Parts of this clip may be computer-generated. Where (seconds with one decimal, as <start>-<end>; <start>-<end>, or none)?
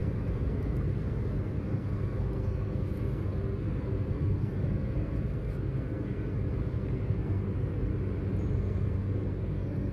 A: 0.0-7.9; 8.5-9.9